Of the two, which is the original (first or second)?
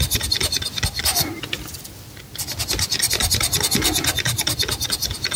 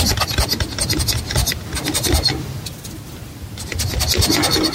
second